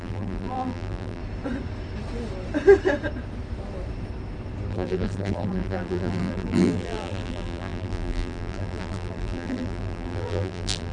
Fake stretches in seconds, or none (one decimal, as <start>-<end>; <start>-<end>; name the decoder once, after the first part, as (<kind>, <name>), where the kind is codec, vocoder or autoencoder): 0.0-1.2 (vocoder, BigVGAN v2); 4.7-10.9